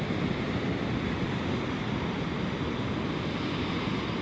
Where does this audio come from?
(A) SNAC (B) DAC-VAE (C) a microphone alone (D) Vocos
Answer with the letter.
C